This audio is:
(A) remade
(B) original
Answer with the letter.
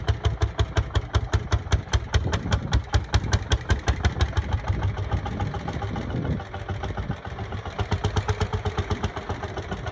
B